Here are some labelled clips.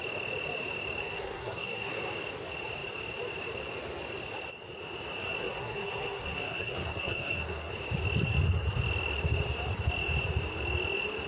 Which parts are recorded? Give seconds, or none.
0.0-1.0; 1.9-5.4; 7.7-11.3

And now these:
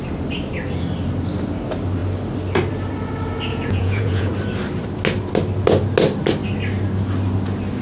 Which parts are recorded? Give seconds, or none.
0.0-3.5; 4.3-7.8